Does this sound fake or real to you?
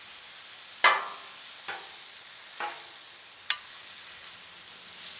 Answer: real